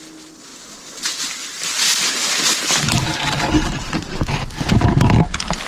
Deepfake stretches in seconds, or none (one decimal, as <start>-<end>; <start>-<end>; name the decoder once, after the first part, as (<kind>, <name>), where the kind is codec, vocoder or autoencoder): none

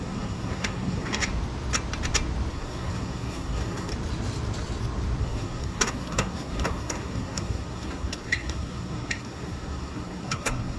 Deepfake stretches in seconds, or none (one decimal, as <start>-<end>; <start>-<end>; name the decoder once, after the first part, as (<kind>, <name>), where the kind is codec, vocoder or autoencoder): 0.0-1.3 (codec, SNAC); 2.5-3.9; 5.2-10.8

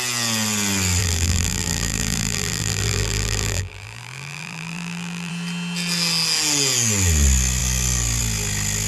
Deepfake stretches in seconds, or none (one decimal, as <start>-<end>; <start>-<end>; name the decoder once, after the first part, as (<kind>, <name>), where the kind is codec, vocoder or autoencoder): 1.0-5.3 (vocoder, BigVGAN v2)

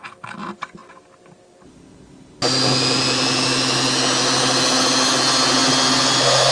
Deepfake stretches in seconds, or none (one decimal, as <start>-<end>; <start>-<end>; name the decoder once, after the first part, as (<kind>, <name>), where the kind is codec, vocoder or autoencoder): none

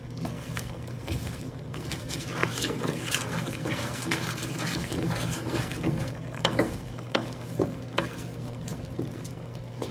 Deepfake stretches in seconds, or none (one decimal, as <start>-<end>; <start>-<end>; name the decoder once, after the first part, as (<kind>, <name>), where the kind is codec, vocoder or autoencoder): 0.0-9.9 (codec, SNAC)

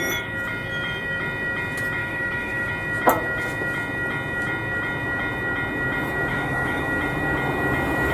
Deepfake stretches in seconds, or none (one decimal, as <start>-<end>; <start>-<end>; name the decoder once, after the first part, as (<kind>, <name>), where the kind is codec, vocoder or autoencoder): 2.0-2.7 (autoencoder, DAC-VAE); 6.3-6.8

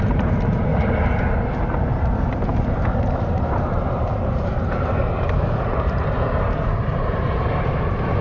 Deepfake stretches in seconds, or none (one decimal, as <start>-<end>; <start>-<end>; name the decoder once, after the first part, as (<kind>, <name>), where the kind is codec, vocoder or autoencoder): 0.0-0.7 (vocoder, BigVGAN v2); 1.2-8.2